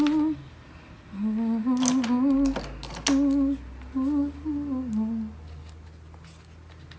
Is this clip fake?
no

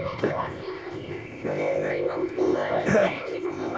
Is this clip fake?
yes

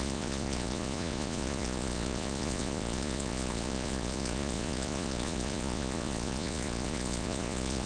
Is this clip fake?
yes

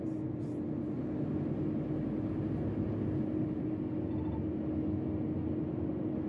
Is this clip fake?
no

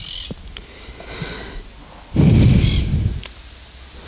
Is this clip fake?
no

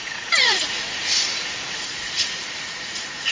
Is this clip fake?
yes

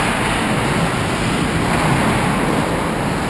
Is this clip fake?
no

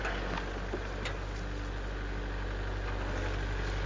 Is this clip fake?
no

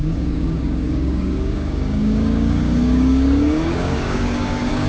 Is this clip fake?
yes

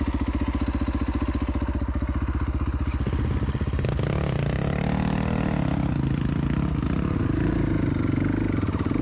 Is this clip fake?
no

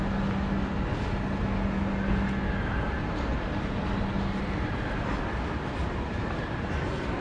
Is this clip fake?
no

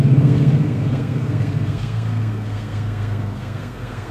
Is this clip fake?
yes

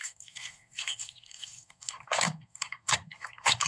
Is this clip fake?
yes